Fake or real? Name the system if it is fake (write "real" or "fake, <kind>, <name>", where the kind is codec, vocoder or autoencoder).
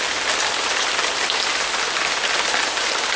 real